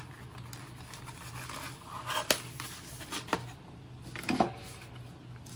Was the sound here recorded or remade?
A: recorded